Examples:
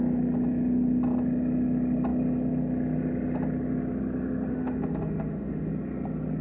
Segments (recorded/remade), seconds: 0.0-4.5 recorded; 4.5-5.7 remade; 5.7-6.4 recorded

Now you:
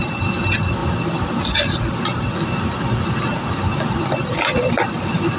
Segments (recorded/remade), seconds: 0.0-5.4 recorded

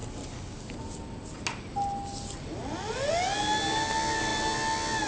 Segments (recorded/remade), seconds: 0.0-5.1 recorded

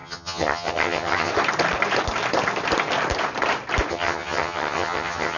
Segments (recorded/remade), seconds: 0.0-1.3 remade; 1.3-3.9 recorded; 3.9-5.4 remade